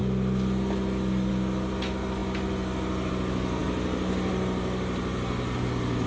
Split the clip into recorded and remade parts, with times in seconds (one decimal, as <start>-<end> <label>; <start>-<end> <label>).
0.0-6.1 recorded